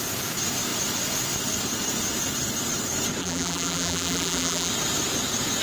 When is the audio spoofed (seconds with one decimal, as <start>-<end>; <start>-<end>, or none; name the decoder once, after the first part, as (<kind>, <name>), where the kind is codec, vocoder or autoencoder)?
3.2-4.7 (vocoder, BigVGAN v2)